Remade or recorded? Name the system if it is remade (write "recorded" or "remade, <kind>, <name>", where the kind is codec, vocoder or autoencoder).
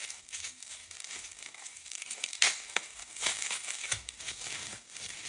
remade, codec, DAC